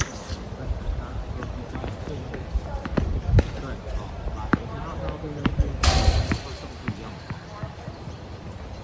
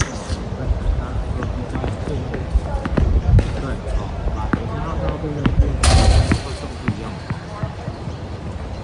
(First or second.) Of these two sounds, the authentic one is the second